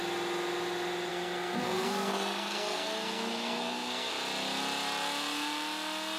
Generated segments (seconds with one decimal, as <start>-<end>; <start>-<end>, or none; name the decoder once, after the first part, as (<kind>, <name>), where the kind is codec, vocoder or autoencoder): 1.1-4.1 (codec, SNAC)